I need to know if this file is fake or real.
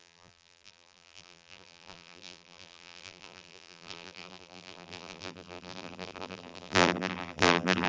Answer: fake